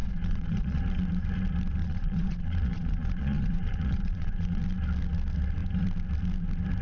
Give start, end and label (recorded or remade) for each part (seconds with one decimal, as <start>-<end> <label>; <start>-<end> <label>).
0.0-0.8 remade; 0.8-1.8 recorded; 1.8-4.6 remade; 4.6-6.8 recorded